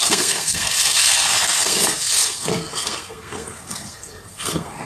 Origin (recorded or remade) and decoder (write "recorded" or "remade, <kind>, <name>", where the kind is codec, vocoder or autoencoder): remade, codec, SNAC